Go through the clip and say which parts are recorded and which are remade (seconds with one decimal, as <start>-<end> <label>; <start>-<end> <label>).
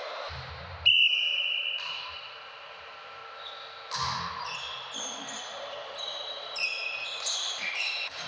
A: 0.0-3.2 remade; 3.2-4.3 recorded; 4.3-8.3 remade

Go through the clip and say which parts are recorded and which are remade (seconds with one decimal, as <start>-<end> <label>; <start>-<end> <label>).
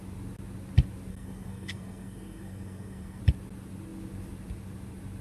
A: 0.0-1.1 recorded; 1.1-3.2 remade; 3.2-5.2 recorded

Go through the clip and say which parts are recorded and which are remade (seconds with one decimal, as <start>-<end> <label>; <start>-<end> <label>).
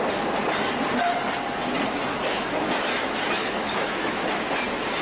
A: 0.0-2.1 recorded; 2.1-4.3 remade; 4.3-5.0 recorded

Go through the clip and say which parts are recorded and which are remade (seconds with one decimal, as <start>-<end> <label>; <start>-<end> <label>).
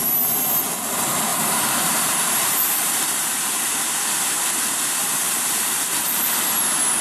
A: 0.0-1.3 recorded; 1.3-3.7 remade; 3.7-5.0 recorded; 5.0-6.3 remade; 6.3-7.0 recorded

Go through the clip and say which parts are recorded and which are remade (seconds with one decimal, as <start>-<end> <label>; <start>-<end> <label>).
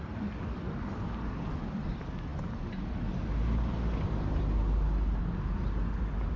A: 0.0-6.4 recorded